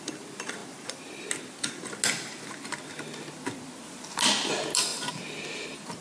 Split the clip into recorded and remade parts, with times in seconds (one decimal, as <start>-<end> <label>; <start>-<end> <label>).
0.0-6.0 recorded